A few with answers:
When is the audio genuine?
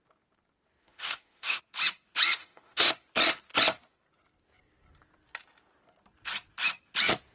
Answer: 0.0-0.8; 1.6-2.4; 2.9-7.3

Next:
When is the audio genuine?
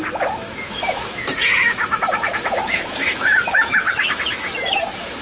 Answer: none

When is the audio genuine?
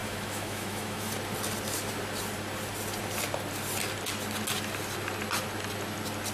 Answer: 1.1-6.3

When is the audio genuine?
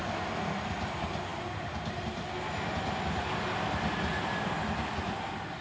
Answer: 0.0-5.6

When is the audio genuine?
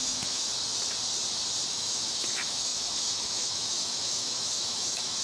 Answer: 0.5-1.7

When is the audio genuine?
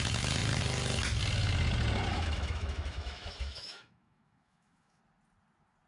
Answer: 0.0-2.1; 5.0-5.9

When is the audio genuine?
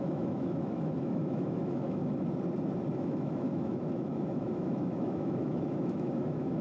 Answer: 2.0-2.9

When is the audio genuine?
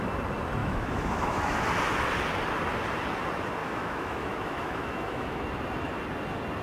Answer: 0.0-0.6; 1.7-3.6; 5.4-6.6